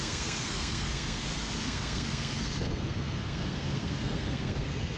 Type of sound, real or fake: fake